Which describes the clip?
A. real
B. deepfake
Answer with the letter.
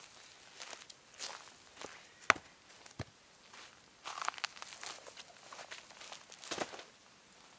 A